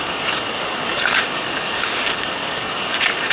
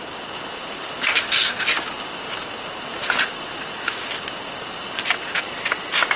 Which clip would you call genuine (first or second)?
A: second